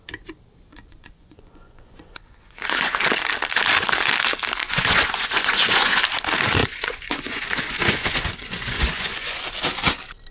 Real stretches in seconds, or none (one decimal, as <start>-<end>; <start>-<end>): 0.0-0.7; 3.0-4.6; 6.0-6.6; 9.4-10.3